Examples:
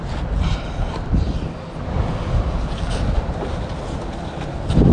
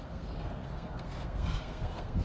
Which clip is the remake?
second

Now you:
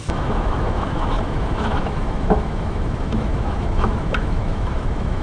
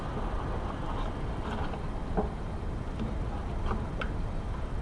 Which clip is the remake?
first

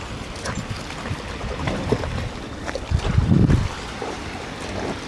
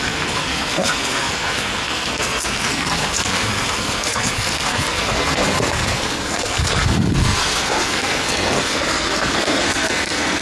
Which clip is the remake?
second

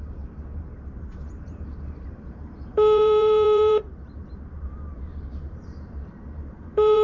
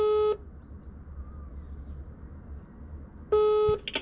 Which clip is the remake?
first